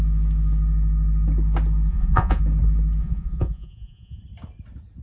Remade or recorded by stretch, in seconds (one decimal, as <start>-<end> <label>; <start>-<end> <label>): 0.0-1.9 recorded; 1.9-2.4 remade; 2.4-3.0 recorded; 3.0-4.2 remade; 4.2-5.0 recorded